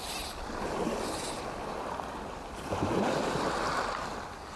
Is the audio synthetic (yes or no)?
no